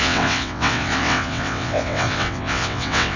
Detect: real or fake fake